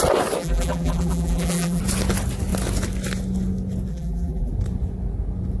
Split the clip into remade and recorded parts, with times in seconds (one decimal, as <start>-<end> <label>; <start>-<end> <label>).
0.0-0.4 recorded; 0.4-1.8 remade; 1.8-3.9 recorded; 3.9-4.5 remade; 4.5-5.6 recorded